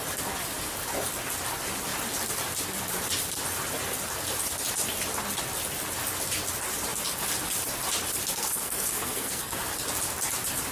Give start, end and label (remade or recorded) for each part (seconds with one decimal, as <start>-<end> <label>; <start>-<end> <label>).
0.0-8.3 recorded; 8.3-9.6 remade; 9.6-10.7 recorded